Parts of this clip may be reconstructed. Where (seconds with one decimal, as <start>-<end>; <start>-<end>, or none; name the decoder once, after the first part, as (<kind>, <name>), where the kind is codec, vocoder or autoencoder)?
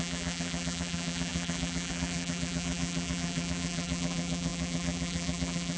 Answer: 0.0-5.8 (vocoder, BigVGAN v2)